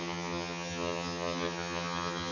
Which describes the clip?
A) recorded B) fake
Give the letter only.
B